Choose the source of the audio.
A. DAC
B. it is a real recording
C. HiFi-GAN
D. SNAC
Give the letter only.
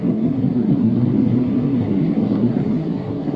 D